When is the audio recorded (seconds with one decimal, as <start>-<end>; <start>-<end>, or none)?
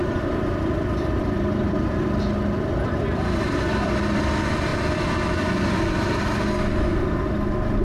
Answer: 4.2-7.8